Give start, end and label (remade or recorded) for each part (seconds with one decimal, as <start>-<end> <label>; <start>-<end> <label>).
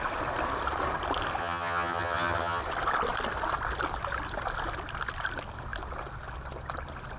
0.0-1.4 recorded; 1.4-2.6 remade; 2.6-7.2 recorded